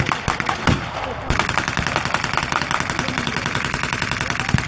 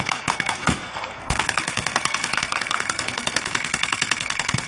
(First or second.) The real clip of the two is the first